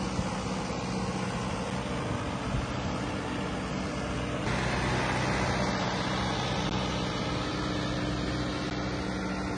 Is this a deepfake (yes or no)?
no